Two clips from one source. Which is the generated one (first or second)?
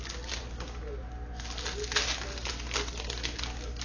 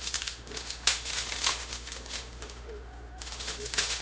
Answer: second